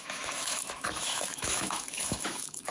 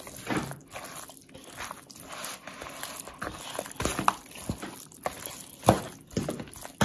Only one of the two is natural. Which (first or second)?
second